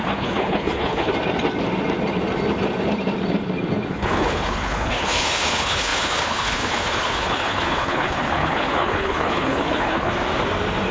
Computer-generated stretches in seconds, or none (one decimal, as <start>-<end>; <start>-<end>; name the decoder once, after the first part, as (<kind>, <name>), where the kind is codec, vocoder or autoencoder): 0.0-1.1 (codec, HILCodec); 3.9-10.1